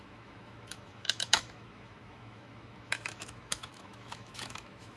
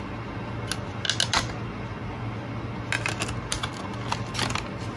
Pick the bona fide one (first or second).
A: second